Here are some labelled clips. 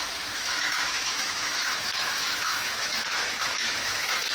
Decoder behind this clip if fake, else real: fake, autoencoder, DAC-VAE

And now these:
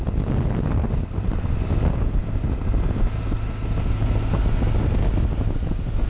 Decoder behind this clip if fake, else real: real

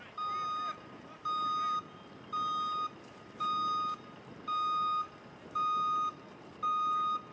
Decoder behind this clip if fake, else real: real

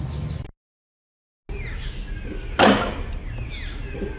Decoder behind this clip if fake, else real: real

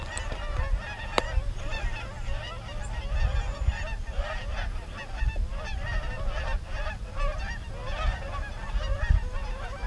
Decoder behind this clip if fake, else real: real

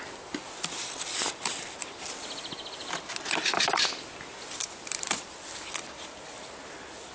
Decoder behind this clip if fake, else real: real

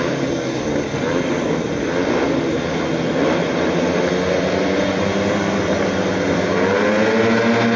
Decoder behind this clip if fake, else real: real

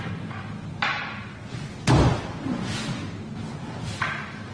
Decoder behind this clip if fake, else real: real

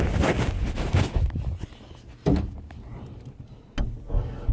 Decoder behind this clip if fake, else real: real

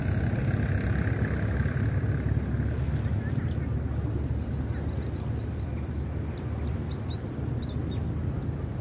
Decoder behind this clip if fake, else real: real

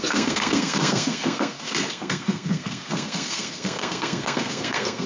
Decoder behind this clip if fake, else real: fake, codec, SNAC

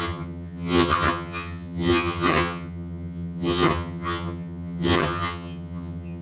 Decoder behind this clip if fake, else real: fake, vocoder, HiFi-GAN